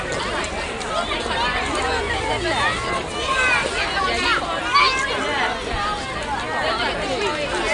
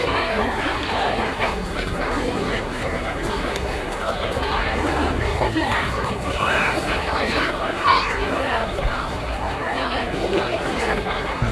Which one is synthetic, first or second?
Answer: second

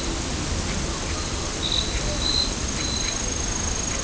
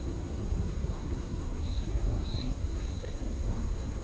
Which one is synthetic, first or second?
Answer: second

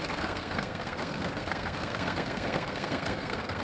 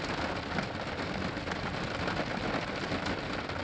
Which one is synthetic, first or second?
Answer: first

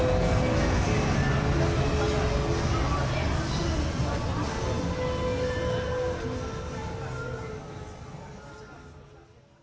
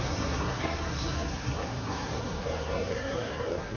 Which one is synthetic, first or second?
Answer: second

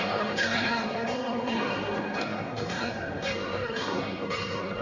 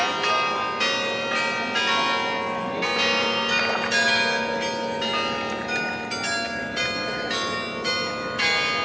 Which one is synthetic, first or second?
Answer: first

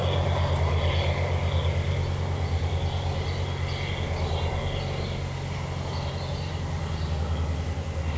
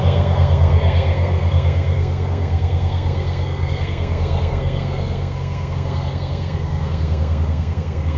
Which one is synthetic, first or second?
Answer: second